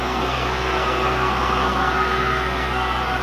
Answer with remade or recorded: remade